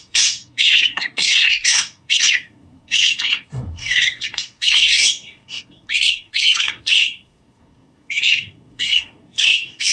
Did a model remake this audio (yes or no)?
yes